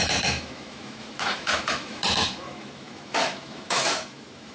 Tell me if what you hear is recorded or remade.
remade